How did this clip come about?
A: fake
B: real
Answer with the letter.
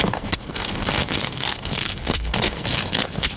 A